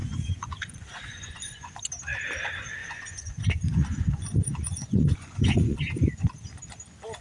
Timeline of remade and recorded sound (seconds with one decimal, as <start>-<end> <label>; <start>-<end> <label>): 0.0-1.8 remade; 1.8-2.8 recorded; 2.8-6.3 remade; 6.3-7.2 recorded